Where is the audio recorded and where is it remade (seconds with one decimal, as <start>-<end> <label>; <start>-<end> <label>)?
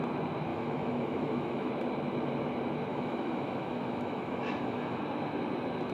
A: 0.0-0.5 recorded; 0.5-1.7 remade; 1.7-2.9 recorded; 2.9-5.0 remade; 5.0-5.9 recorded